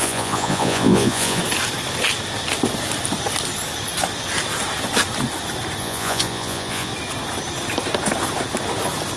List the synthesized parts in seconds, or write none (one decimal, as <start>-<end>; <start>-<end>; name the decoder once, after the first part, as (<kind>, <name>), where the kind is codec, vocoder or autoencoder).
0.0-1.4 (vocoder, Vocos); 5.8-6.9